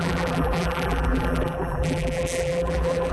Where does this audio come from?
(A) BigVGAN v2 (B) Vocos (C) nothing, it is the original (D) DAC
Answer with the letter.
A